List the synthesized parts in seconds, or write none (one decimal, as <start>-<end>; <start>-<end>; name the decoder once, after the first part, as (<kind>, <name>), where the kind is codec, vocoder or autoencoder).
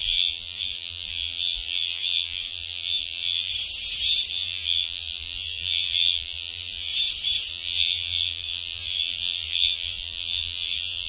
0.0-3.5 (vocoder, BigVGAN v2); 4.3-6.9; 7.5-11.1